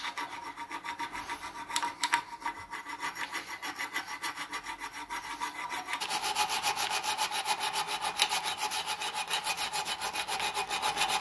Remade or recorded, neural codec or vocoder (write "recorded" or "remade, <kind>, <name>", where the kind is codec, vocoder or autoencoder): recorded